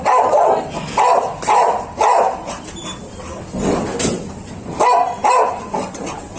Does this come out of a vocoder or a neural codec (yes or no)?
no